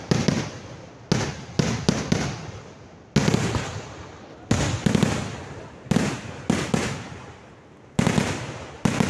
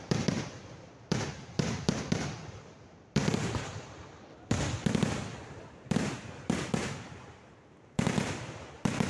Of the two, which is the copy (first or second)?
second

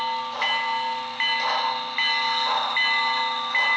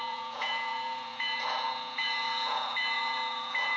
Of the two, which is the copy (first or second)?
second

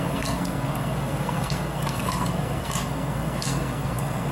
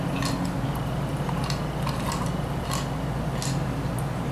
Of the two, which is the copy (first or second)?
first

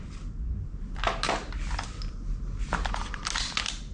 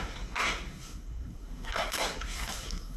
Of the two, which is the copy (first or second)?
second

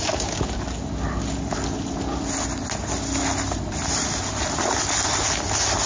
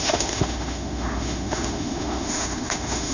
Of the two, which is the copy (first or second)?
second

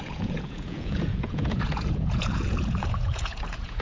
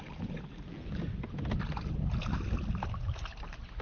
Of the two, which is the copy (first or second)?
first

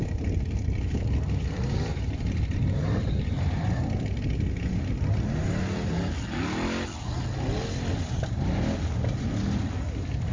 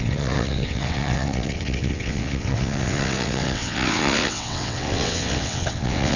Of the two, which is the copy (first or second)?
second